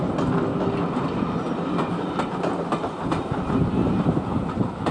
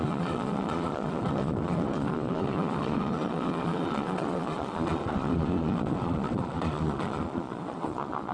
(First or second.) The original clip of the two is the first